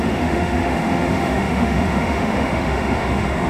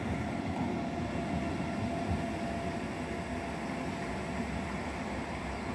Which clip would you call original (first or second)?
second